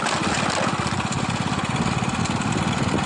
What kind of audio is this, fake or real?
real